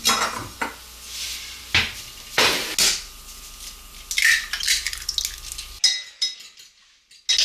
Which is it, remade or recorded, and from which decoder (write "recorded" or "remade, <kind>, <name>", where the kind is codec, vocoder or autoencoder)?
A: recorded